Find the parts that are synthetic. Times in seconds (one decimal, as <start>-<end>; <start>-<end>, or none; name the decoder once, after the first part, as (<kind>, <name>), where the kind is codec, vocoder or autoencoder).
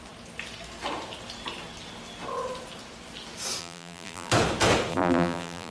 3.6-4.3 (vocoder, BigVGAN v2); 4.9-5.7